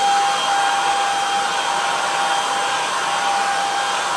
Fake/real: real